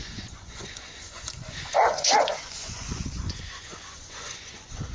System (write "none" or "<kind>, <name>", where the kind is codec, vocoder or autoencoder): vocoder, Vocos